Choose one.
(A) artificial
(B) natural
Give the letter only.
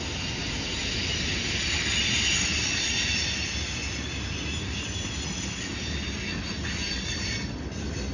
B